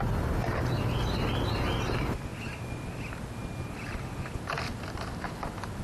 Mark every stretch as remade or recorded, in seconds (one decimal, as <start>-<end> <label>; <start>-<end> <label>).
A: 0.0-5.8 recorded